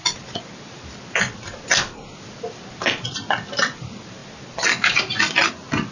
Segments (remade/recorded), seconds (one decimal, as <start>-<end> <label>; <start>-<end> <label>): 0.0-5.9 recorded

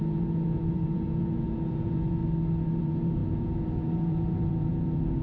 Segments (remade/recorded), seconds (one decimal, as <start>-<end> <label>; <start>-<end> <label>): 0.0-2.2 remade; 2.2-2.8 recorded; 2.8-5.2 remade

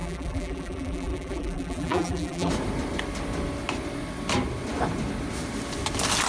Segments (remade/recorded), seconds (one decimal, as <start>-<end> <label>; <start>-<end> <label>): 0.0-2.5 remade; 2.5-6.3 recorded

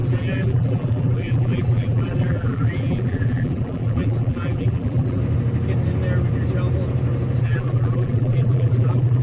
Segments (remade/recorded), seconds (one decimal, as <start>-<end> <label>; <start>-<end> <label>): 0.0-5.2 remade; 5.2-7.4 recorded; 7.4-9.2 remade